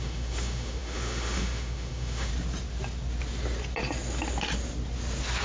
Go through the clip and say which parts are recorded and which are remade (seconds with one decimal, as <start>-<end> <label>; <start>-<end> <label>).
0.0-2.3 remade; 2.3-5.4 recorded